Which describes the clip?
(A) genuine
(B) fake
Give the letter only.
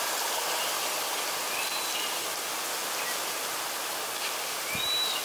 A